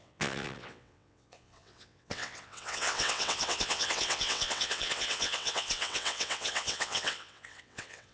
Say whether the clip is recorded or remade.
remade